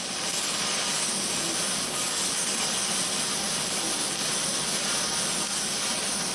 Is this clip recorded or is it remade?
recorded